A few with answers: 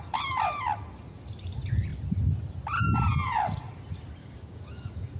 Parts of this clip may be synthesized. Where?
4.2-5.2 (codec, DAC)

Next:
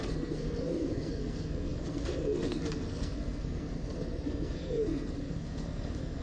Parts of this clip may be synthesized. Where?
0.0-6.2 (codec, SNAC)

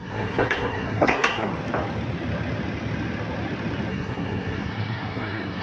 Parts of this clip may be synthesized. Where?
0.0-1.5 (codec, SNAC); 3.9-5.6

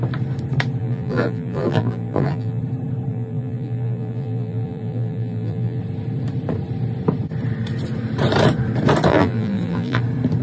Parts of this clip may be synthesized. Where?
0.8-2.6 (vocoder, BigVGAN v2); 3.1-5.8; 9.1-10.0

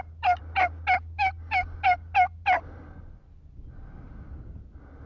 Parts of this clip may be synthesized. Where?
none

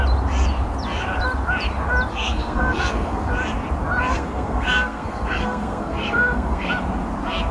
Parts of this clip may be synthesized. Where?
2.1-3.3 (codec, SNAC); 4.1-6.7

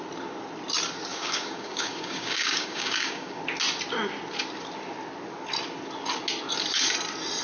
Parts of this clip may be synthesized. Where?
1.1-3.4 (codec, DAC)